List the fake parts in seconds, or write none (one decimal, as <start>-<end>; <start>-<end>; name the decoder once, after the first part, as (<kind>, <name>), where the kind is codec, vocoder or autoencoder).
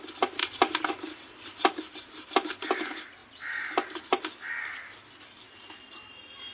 none